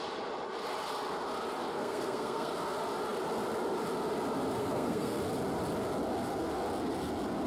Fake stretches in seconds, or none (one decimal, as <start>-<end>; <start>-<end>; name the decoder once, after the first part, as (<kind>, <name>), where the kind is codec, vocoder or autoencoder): 1.7-2.5 (codec, SNAC); 4.6-5.2